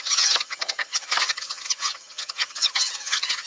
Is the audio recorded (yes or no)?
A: no